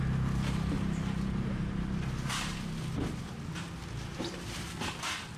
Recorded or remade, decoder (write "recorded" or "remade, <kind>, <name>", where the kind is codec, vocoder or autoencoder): recorded